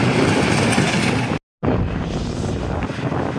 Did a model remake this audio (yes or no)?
no